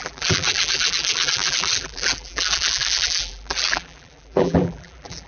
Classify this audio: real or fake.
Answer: fake